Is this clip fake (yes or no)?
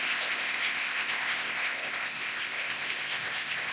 yes